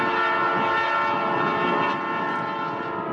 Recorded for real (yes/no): yes